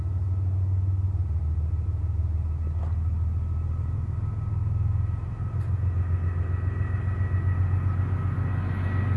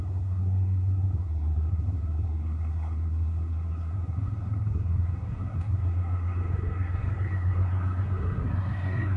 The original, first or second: first